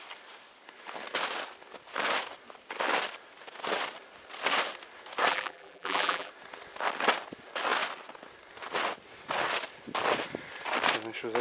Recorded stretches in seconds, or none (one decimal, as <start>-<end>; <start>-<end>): 0.0-5.3; 6.3-11.4